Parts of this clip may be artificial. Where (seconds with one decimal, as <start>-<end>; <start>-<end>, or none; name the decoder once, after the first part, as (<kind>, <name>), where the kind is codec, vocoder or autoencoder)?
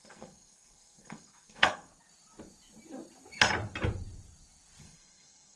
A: 0.0-1.9 (codec, SNAC); 4.8-5.6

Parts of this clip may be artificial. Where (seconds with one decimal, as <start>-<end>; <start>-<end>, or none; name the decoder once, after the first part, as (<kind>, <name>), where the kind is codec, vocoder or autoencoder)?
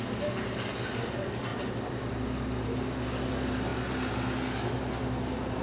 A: none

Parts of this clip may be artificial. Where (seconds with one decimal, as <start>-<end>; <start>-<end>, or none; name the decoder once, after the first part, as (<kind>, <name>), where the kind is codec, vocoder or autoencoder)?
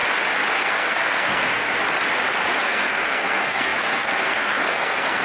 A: 0.5-1.8 (codec, SNAC); 2.6-5.2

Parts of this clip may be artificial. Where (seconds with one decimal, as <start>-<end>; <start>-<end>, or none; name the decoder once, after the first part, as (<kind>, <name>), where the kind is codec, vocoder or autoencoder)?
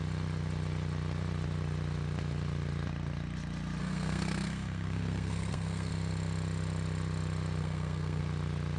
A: 3.8-5.9 (codec, SNAC); 7.6-8.2